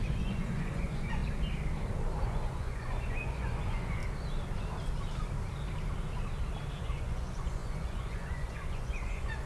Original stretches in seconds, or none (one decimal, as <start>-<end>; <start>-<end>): 1.2-2.2; 4.0-6.8